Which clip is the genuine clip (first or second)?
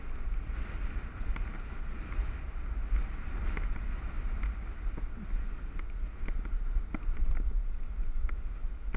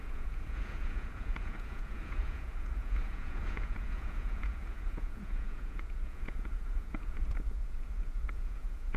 first